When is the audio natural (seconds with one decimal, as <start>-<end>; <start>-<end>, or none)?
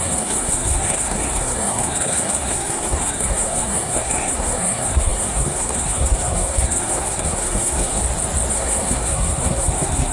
8.0-8.5